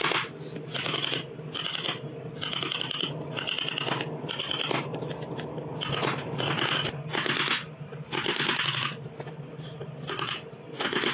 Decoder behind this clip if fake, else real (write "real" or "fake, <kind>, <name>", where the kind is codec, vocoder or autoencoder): real